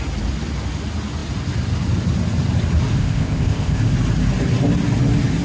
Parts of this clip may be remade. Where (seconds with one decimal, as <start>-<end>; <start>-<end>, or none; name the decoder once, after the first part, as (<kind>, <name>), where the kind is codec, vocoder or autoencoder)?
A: 3.0-3.8 (codec, ZipCodec)